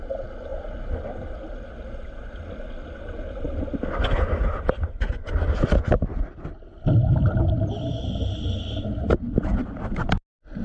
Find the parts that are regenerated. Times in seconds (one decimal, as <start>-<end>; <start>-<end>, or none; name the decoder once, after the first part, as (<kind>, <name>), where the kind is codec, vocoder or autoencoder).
none